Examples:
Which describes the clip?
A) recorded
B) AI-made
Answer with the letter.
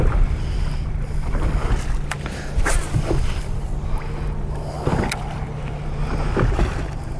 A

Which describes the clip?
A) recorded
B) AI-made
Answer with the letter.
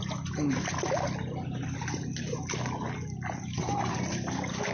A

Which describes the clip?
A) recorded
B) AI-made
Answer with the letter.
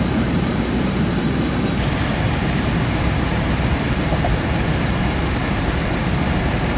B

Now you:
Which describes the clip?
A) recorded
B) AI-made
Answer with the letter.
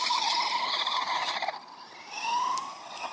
A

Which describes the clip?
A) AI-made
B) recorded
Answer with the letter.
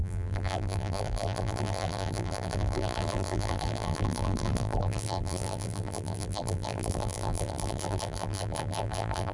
A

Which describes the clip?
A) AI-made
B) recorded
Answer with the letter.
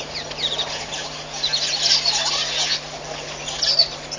B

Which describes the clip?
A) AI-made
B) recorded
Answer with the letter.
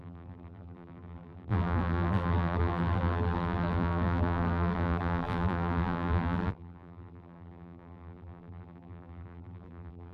A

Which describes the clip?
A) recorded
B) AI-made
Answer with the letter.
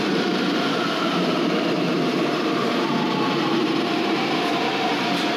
B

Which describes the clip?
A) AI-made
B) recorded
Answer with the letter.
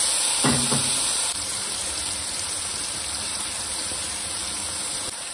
A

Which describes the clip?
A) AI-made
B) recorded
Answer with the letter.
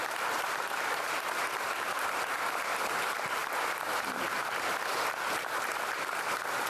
A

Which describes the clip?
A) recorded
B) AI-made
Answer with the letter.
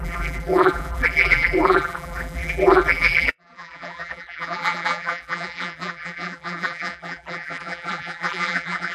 B